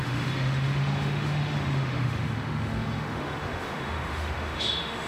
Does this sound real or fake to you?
fake